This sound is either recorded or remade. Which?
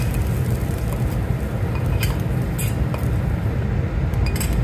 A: recorded